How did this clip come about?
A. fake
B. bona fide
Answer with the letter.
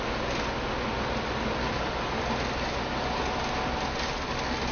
B